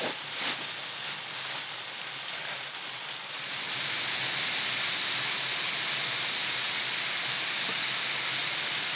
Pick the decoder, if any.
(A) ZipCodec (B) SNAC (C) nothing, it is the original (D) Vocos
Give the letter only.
C